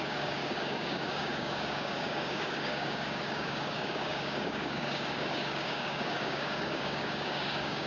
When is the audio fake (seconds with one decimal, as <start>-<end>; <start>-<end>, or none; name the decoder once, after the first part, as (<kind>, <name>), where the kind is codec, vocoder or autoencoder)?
0.0-7.9 (codec, DAC)